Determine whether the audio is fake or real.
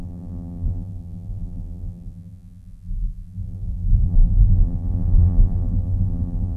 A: fake